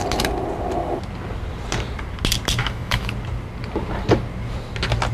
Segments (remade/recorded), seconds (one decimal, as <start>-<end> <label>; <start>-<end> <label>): 0.0-2.6 recorded; 2.6-3.1 remade; 3.1-5.1 recorded

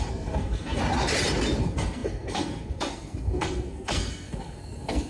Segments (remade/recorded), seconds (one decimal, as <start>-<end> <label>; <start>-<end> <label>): 0.0-0.8 remade; 0.8-1.6 recorded; 1.6-5.1 remade

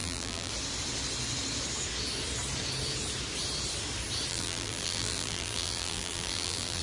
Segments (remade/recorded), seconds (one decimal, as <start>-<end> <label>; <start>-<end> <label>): 0.0-0.5 remade; 0.5-4.3 recorded; 4.3-6.8 remade

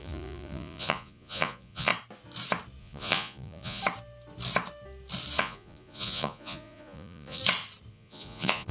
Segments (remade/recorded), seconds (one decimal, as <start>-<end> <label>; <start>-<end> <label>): 0.0-1.9 remade; 1.9-2.8 recorded; 2.8-3.8 remade; 3.8-5.4 recorded; 5.4-7.4 remade; 7.4-7.9 recorded; 7.9-8.7 remade